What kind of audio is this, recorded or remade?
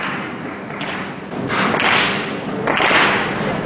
recorded